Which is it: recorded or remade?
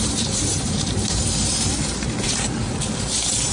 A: remade